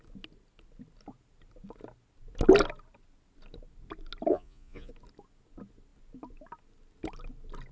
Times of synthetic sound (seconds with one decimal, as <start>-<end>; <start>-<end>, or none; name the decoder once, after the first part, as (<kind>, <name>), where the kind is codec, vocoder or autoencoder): 4.3-4.9 (vocoder, Vocos)